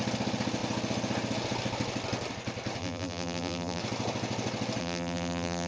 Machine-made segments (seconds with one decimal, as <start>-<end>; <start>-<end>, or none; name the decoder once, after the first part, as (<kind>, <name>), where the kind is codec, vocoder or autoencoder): 2.8-3.8 (vocoder, BigVGAN v2); 4.8-5.7